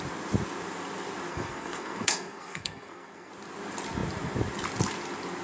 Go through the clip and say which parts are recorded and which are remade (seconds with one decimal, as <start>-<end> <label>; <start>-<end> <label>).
0.0-1.3 recorded; 1.3-3.3 remade; 3.3-5.4 recorded